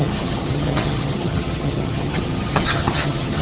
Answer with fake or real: fake